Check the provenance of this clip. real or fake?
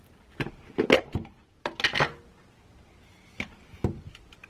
real